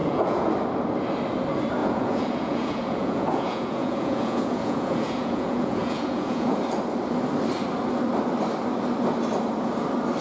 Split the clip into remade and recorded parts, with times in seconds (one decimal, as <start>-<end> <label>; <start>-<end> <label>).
0.0-0.5 remade; 0.5-1.8 recorded; 1.8-6.6 remade; 6.6-10.2 recorded

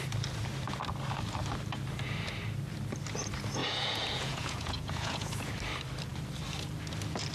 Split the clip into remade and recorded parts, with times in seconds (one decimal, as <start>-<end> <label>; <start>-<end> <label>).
0.0-3.6 recorded; 3.6-5.5 remade; 5.5-7.3 recorded

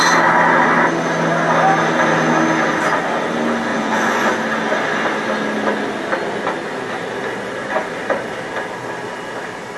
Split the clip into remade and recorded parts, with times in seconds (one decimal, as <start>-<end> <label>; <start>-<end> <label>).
0.0-3.7 recorded; 3.7-4.3 remade; 4.3-9.8 recorded

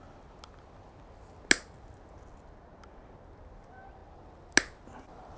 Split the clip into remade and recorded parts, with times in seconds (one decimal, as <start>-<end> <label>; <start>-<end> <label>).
0.0-5.4 recorded